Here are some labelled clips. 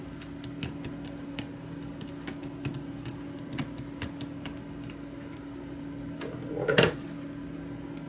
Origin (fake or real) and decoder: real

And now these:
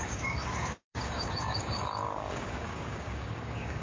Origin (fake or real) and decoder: fake, codec, DAC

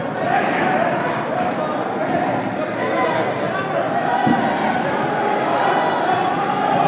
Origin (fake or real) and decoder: real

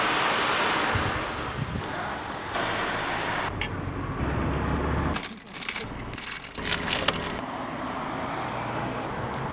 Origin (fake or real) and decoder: real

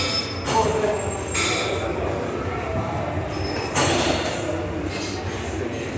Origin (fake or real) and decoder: real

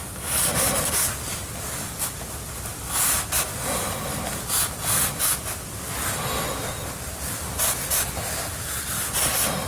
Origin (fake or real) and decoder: real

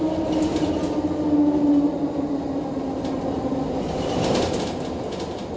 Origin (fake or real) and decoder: real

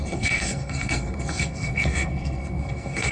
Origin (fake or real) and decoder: fake, codec, SNAC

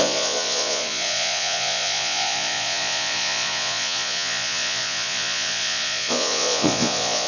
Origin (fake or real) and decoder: fake, vocoder, Vocos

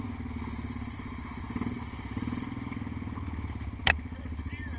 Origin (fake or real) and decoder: real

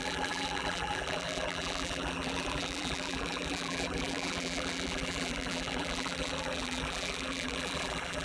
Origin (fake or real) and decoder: fake, vocoder, BigVGAN v2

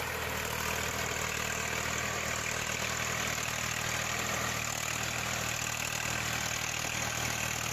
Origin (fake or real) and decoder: real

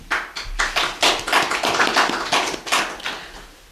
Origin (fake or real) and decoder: real